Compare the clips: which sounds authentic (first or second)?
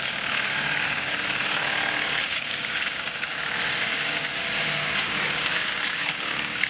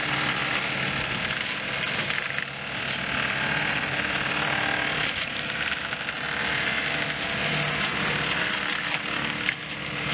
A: second